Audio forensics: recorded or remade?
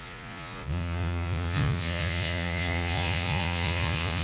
remade